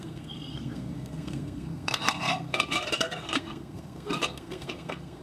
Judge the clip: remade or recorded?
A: remade